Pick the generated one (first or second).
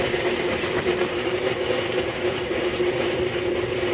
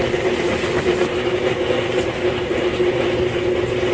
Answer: first